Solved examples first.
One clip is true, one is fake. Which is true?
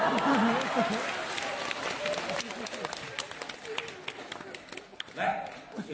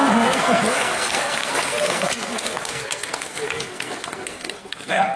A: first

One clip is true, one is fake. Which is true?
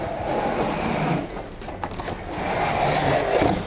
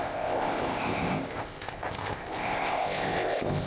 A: first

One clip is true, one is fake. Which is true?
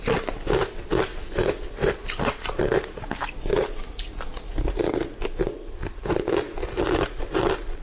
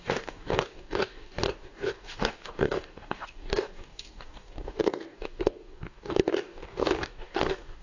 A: first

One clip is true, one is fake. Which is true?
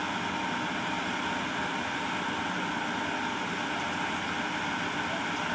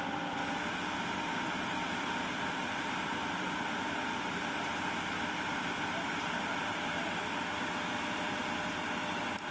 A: first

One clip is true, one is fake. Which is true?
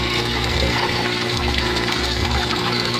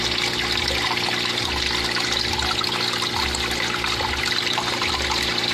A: second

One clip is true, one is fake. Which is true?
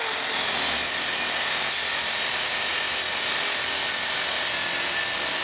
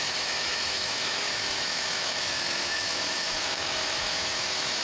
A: first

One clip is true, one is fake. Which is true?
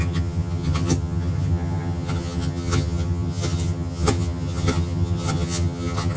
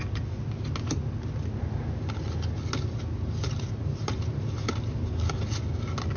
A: second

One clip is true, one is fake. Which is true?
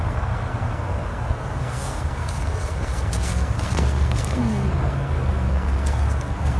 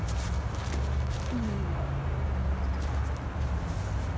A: second